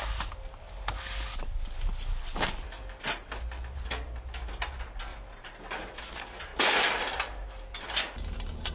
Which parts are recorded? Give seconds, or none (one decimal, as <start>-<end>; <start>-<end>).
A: 0.0-8.7